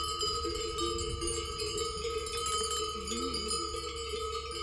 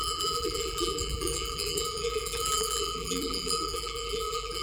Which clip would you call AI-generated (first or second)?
second